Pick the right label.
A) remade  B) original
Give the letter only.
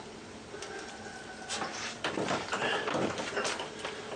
B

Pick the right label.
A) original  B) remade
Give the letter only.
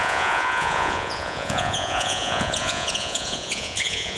B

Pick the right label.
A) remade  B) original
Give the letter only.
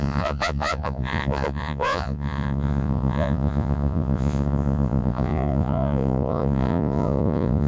A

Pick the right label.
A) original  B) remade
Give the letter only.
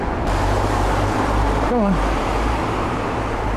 B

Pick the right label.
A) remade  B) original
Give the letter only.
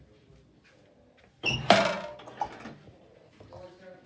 B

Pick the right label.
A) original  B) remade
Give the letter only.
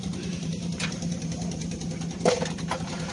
B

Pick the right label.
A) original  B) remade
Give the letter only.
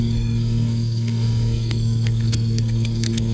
B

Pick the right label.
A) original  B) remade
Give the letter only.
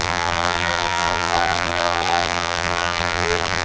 B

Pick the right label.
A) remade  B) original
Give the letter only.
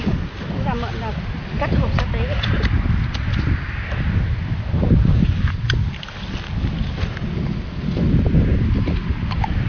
B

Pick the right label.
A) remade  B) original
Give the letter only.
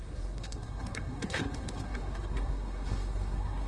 A